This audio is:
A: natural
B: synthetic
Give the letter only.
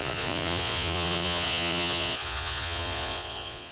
B